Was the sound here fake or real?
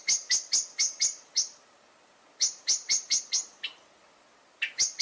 real